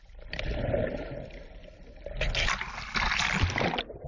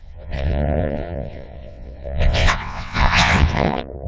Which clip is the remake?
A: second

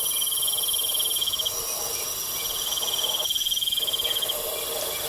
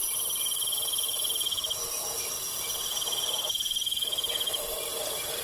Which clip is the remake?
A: second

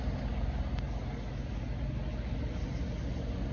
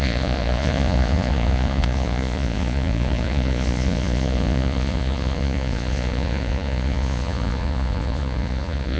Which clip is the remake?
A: second